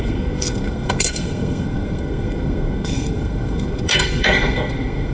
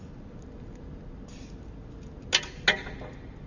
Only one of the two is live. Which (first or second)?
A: second